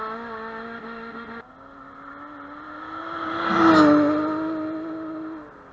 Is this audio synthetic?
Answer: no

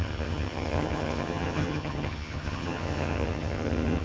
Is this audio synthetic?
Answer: yes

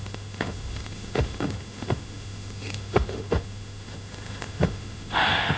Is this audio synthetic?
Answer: yes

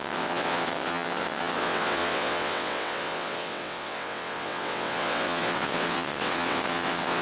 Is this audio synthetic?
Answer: yes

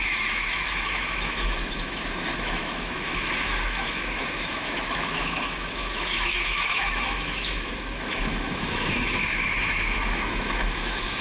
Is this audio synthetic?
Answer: yes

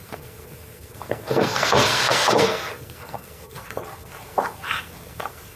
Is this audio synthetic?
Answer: yes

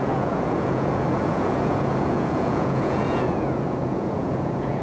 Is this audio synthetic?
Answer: yes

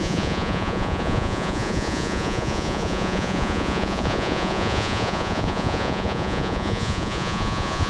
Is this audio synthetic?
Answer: yes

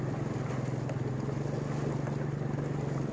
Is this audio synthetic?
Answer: no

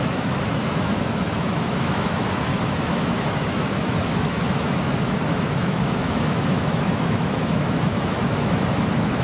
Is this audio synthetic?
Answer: yes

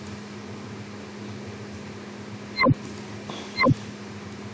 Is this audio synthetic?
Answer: no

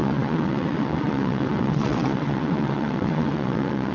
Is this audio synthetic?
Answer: yes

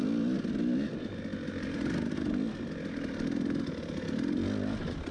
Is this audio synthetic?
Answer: no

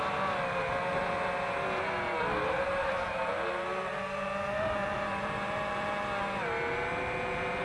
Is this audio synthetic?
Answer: no